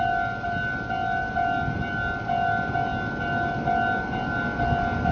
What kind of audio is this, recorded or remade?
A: recorded